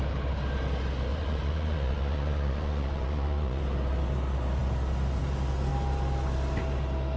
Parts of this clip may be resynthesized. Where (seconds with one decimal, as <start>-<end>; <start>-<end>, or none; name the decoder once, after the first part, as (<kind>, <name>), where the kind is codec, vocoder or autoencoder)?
1.1-3.6 (vocoder, Vocos)